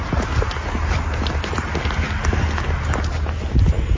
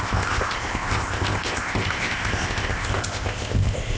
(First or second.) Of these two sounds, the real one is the first